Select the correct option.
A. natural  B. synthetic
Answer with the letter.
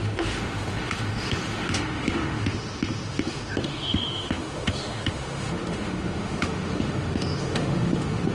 B